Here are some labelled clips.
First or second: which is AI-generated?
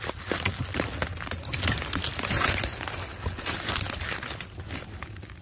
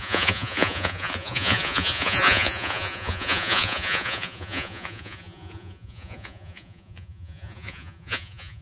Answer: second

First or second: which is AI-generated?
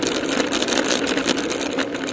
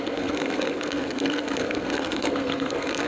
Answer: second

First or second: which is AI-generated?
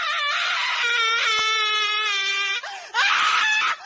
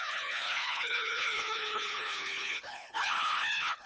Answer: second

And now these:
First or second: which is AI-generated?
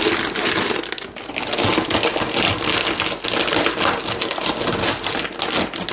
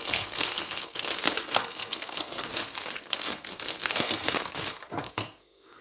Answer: second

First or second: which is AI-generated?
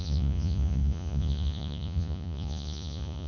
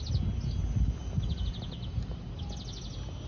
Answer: first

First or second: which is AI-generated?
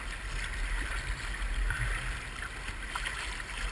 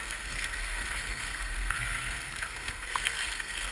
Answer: second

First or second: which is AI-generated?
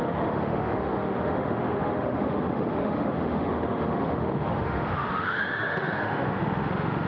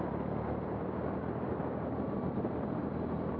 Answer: first